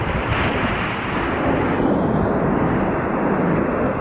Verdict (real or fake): real